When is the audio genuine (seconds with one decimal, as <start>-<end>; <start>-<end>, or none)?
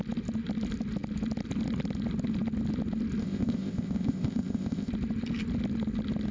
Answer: 0.0-3.2; 4.9-6.3